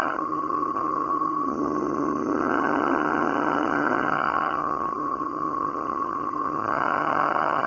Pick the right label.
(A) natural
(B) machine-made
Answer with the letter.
B